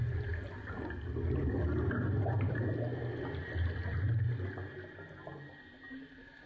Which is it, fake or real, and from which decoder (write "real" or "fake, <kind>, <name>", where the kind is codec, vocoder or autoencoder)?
real